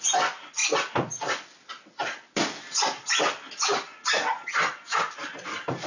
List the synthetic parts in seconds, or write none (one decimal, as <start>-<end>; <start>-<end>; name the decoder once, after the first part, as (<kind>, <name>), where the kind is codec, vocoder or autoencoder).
none